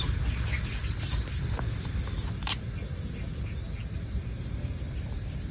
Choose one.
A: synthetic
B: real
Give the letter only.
B